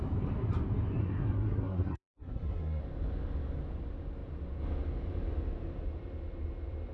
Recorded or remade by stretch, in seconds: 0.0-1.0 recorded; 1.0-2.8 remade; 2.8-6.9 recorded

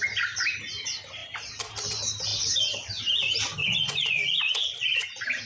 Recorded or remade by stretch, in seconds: 0.0-3.6 recorded; 3.6-5.0 remade; 5.0-5.5 recorded

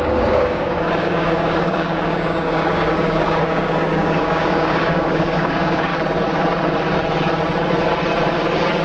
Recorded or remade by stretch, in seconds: 0.0-5.9 remade; 5.9-8.8 recorded

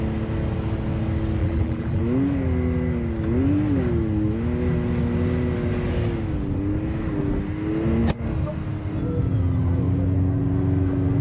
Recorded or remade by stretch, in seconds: 0.0-1.4 recorded; 1.4-2.0 remade; 2.0-11.2 recorded

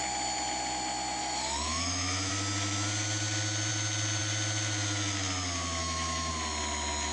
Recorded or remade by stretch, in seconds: 0.0-1.2 recorded; 1.2-2.3 remade; 2.3-5.8 recorded; 5.8-6.3 remade; 6.3-7.1 recorded

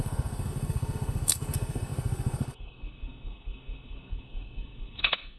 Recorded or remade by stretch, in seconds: 0.0-5.4 remade

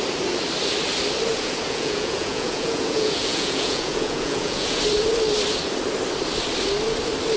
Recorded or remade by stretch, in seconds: 0.0-1.3 recorded; 1.3-4.8 remade; 4.8-7.4 recorded

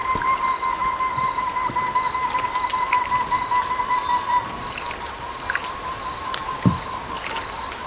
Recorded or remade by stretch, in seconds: 0.0-7.9 recorded